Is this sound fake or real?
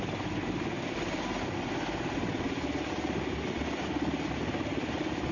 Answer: real